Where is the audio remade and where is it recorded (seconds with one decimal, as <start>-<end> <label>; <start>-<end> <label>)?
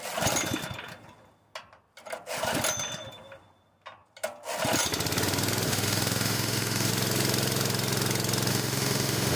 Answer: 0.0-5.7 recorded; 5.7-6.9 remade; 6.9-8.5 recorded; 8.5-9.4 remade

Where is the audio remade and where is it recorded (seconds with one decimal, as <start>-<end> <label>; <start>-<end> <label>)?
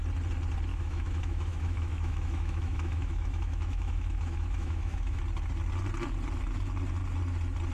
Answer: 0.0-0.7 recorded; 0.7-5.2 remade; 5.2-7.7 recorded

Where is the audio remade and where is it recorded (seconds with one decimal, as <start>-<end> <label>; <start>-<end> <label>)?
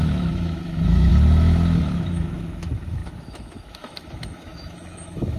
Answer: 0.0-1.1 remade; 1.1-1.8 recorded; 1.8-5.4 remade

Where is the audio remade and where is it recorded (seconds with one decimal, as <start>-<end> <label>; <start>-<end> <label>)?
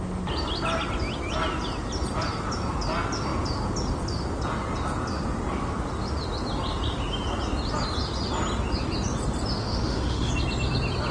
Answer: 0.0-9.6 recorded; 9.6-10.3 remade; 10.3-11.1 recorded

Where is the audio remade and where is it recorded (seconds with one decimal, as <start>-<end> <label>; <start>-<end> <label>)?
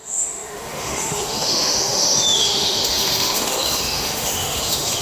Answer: 0.0-5.0 remade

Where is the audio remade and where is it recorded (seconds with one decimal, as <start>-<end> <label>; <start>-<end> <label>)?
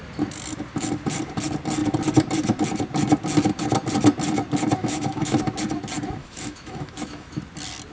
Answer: 0.0-4.8 recorded; 4.8-5.4 remade; 5.4-6.2 recorded; 6.2-7.4 remade; 7.4-7.9 recorded